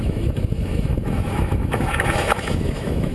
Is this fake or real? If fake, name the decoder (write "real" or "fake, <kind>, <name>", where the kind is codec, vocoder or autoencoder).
fake, autoencoder, DAC-VAE